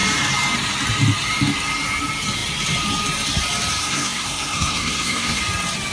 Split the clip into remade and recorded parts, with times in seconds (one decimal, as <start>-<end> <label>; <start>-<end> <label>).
0.0-3.8 recorded; 3.8-5.4 remade; 5.4-5.9 recorded